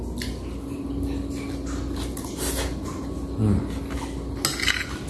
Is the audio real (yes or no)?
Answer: yes